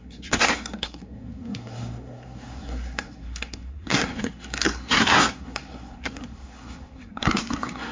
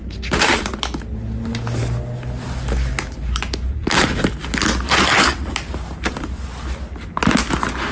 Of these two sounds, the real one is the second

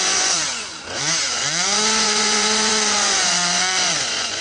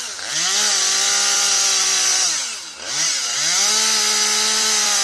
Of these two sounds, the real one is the second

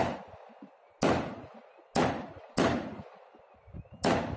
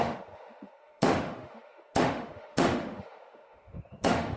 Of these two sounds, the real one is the first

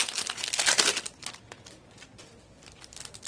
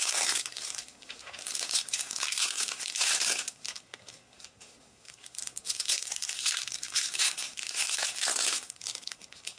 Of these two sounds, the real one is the first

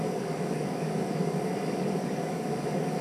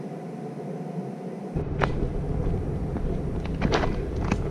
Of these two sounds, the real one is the second